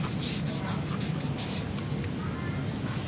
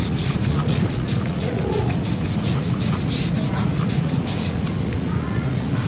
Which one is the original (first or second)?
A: first